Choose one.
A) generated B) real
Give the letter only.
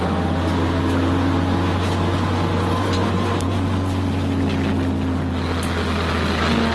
B